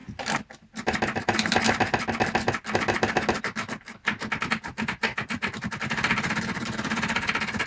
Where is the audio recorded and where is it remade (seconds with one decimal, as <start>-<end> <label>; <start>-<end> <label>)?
0.0-4.7 recorded; 4.7-6.6 remade; 6.6-7.7 recorded